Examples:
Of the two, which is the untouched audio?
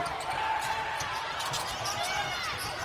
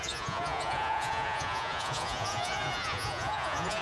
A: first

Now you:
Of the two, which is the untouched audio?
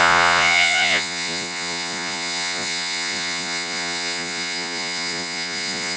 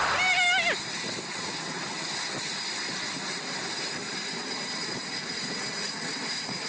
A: second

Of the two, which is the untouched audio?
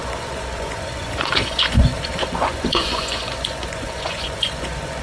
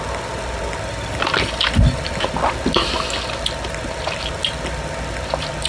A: second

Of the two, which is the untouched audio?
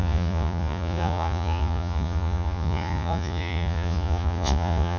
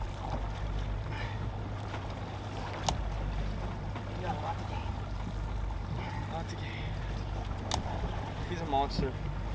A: second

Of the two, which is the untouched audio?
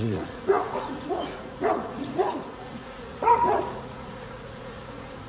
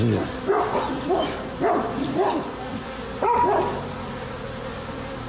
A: second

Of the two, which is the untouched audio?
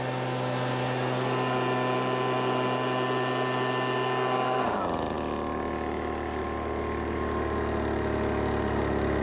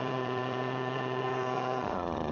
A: first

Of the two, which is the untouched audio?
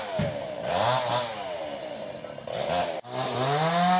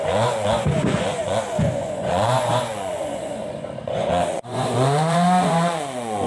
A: first